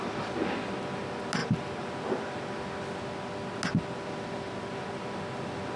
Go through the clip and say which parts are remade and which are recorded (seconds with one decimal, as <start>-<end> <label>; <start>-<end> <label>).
0.0-5.8 recorded